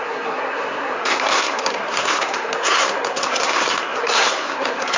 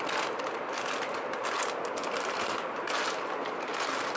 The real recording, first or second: second